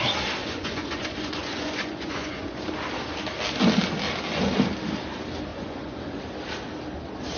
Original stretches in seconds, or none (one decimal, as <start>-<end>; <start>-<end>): 0.0-0.4; 2.7-5.5; 6.2-7.4